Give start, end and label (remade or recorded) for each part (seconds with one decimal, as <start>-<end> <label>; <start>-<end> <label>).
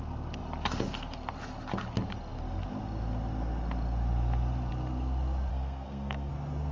0.0-5.5 recorded; 5.5-6.3 remade; 6.3-6.7 recorded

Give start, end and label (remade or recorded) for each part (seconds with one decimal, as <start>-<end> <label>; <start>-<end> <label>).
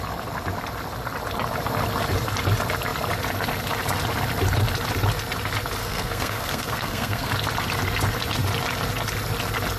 0.0-5.8 recorded; 5.8-7.3 remade; 7.3-9.8 recorded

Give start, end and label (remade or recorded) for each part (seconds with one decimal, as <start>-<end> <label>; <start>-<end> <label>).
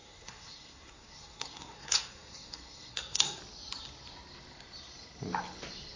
0.0-3.4 remade; 3.4-6.0 recorded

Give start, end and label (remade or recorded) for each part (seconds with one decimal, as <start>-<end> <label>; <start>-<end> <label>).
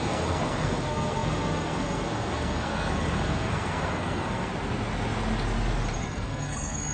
0.0-4.5 remade; 4.5-6.0 recorded; 6.0-6.9 remade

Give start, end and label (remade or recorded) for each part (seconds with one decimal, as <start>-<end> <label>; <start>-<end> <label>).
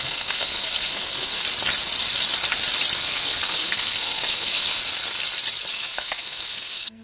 0.0-1.4 remade; 1.4-3.0 recorded; 3.0-4.8 remade; 4.8-5.7 recorded; 5.7-7.0 remade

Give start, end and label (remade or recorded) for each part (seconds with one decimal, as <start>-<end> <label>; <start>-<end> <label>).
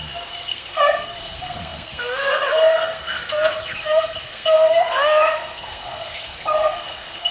0.0-7.3 remade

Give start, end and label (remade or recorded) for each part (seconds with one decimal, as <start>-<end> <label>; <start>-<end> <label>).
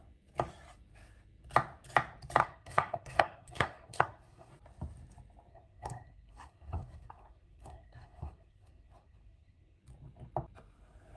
0.0-2.4 recorded; 2.4-4.5 remade; 4.5-5.5 recorded; 5.5-9.8 remade; 9.8-11.2 recorded